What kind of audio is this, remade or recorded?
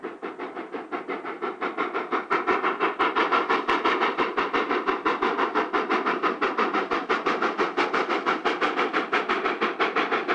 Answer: recorded